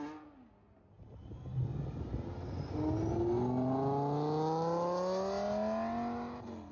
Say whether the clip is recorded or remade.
recorded